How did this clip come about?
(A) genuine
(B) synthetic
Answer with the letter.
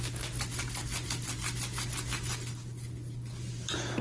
A